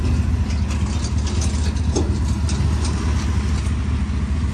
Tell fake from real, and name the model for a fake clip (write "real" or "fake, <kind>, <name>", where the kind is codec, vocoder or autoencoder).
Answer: real